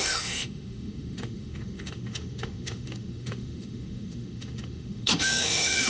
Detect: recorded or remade remade